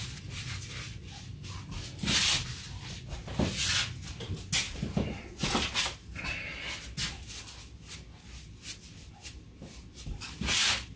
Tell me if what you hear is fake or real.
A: real